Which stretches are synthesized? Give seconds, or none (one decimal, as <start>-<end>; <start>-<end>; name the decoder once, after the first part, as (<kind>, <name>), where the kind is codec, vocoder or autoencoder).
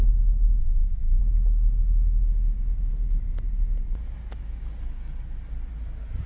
0.6-1.2 (vocoder, BigVGAN v2)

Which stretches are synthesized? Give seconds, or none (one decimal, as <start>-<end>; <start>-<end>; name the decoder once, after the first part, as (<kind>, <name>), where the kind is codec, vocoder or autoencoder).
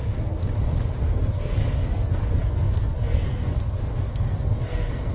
0.0-0.4 (codec, SNAC); 1.0-5.1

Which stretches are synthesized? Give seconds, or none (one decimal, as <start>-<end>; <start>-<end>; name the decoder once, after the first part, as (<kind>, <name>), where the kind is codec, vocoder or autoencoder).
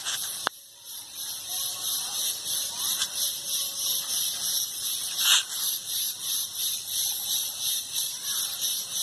0.0-9.0 (vocoder, BigVGAN v2)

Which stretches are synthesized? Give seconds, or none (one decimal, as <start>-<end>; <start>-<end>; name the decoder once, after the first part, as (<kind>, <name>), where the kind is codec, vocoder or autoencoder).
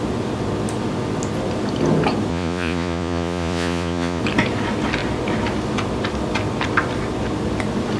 2.3-4.2 (vocoder, Vocos)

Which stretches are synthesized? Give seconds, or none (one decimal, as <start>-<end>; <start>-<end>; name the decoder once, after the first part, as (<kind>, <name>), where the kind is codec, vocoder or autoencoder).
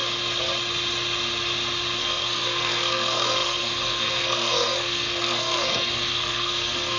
2.0-7.0 (codec, SNAC)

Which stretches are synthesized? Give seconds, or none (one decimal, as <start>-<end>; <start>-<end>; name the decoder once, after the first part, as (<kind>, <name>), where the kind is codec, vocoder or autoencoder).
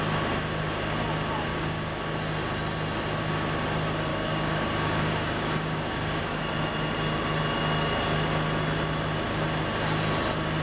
1.5-2.0 (codec, DAC); 4.1-6.4